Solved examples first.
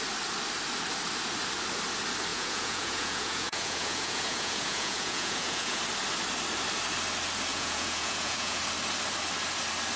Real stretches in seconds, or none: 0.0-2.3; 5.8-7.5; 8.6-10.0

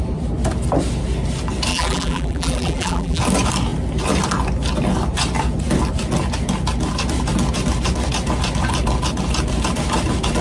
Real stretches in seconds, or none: 0.0-1.7; 3.2-10.4